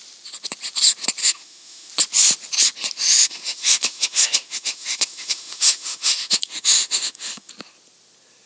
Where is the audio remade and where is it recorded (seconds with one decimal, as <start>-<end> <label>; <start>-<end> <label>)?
0.0-1.2 recorded; 1.2-1.9 remade; 1.9-3.2 recorded; 3.2-7.5 remade; 7.5-8.5 recorded